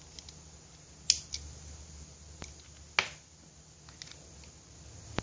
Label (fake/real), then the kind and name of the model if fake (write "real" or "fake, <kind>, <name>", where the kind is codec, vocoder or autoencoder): real